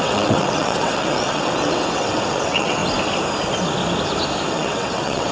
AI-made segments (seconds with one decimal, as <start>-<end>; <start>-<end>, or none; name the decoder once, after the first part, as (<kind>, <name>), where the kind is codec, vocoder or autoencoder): 0.0-2.8 (vocoder, WaveNeXt); 4.5-5.3